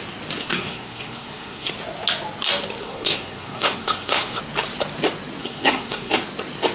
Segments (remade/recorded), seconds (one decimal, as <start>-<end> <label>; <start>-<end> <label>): 0.0-0.4 recorded; 0.4-1.7 remade; 1.7-2.8 recorded; 2.8-4.4 remade; 4.4-5.4 recorded; 5.4-6.1 remade; 6.1-6.7 recorded